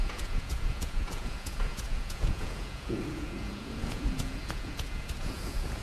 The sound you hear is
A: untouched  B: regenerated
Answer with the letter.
B